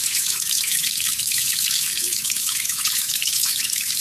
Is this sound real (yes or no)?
no